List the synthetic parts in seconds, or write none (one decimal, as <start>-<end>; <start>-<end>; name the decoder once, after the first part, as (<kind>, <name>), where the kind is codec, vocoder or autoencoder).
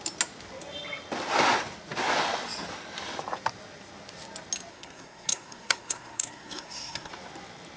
4.7-7.1 (codec, SNAC)